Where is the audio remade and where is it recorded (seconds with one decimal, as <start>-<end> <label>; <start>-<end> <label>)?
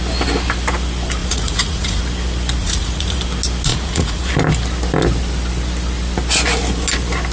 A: 0.0-1.2 recorded; 1.2-2.0 remade; 2.0-2.6 recorded; 2.6-3.2 remade; 3.2-3.7 recorded; 3.7-4.3 remade; 4.3-7.3 recorded